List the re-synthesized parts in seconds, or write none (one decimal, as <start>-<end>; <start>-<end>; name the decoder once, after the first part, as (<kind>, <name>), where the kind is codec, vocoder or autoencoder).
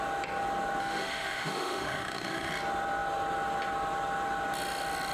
0.8-2.5 (autoencoder, DAC-VAE)